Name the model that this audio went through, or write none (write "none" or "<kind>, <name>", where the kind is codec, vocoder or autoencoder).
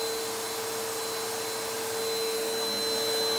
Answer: none